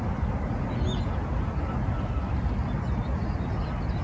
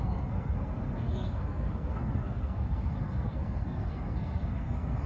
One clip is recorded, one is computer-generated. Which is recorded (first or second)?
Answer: first